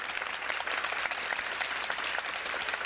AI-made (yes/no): no